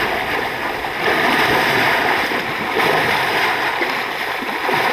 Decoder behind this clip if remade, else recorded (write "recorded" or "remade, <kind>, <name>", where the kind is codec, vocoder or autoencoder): remade, vocoder, BigVGAN v2